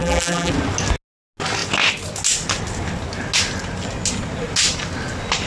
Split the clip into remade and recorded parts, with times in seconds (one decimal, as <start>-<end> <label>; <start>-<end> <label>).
0.0-0.5 remade; 0.5-5.5 recorded